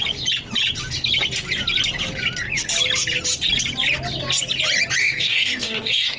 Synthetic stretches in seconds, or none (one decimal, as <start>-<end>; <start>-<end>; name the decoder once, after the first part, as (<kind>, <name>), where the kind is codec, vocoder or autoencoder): 5.0-6.2 (codec, DAC)